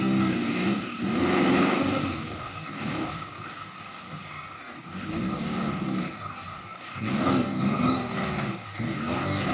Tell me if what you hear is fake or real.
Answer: fake